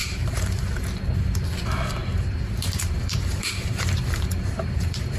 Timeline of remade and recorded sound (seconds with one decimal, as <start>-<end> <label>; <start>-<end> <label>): 0.0-0.8 remade; 0.8-2.0 recorded; 2.0-5.2 remade